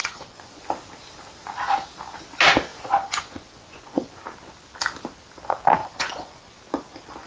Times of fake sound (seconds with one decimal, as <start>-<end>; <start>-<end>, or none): 0.0-0.6; 2.7-4.2; 5.8-6.6

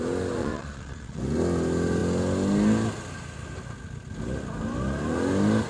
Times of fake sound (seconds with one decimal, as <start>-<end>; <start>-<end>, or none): 0.4-1.2